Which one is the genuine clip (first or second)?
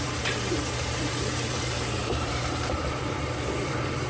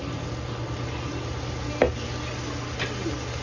second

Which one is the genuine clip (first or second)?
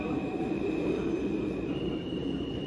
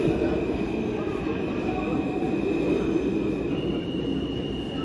second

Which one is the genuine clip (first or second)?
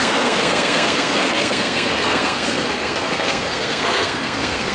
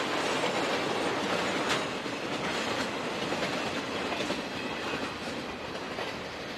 second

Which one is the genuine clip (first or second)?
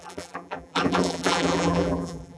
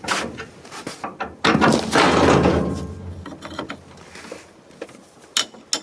second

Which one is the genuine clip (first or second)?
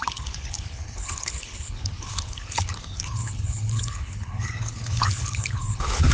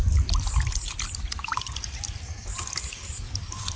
second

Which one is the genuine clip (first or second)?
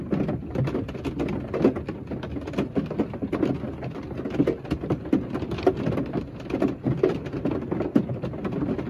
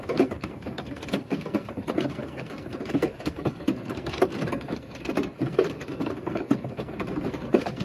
first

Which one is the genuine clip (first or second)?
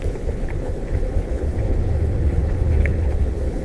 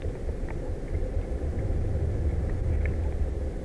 second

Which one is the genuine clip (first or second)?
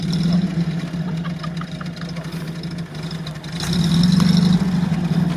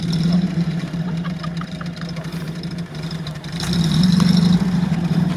first